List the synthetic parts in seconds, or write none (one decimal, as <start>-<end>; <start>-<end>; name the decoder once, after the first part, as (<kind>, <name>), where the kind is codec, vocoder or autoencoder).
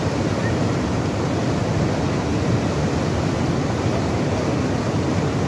none